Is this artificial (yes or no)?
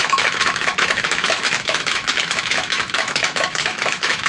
yes